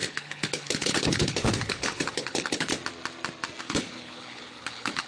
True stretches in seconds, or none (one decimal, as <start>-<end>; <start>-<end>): 2.7-3.6